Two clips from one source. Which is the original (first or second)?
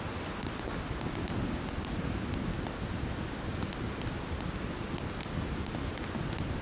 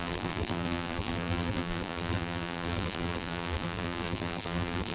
first